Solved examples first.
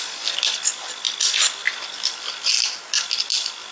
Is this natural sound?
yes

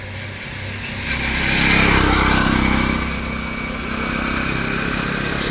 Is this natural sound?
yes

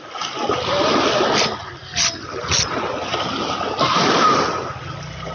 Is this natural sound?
yes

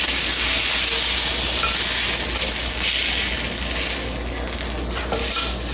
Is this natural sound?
yes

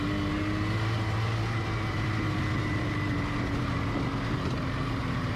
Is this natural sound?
yes